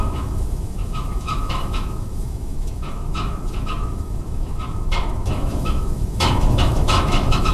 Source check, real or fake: fake